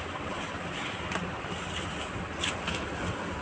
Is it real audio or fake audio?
real